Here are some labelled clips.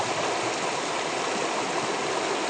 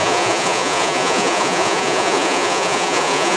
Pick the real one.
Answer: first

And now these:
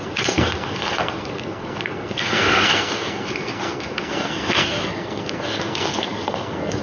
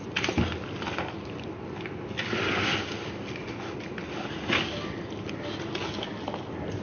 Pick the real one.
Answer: second